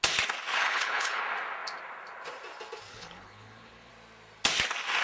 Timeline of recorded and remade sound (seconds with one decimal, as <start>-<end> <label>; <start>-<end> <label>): 0.0-0.6 recorded; 0.6-1.2 remade; 1.2-2.9 recorded; 2.9-3.9 remade; 3.9-5.0 recorded